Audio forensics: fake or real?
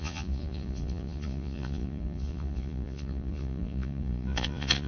fake